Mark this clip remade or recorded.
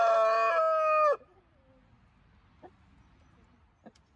recorded